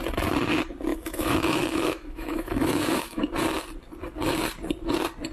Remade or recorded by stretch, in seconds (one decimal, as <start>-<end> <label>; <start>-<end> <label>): 0.0-0.9 recorded; 0.9-3.2 remade; 3.2-5.3 recorded